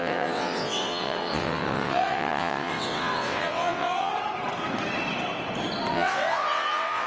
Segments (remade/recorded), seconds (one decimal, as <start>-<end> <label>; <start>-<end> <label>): 0.0-4.1 remade; 4.1-5.9 recorded; 5.9-7.1 remade